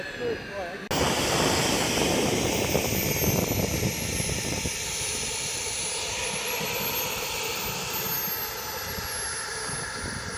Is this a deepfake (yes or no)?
no